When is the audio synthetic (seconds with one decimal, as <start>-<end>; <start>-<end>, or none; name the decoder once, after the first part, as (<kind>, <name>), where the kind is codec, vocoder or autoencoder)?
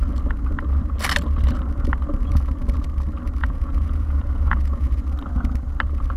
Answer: 3.4-5.0 (vocoder, Vocos)